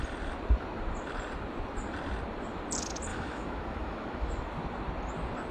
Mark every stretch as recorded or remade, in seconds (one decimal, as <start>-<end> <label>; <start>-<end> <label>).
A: 0.0-3.1 recorded; 3.1-4.5 remade; 4.5-5.5 recorded